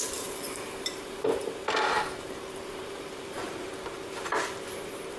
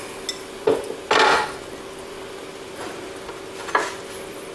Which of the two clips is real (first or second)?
second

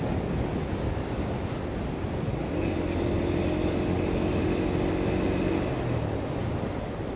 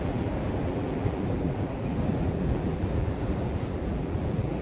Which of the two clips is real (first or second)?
first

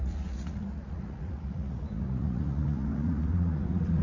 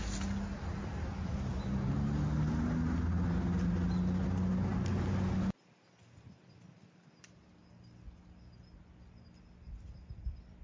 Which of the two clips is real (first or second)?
second